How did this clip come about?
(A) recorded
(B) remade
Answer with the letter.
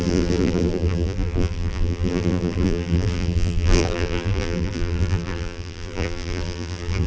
B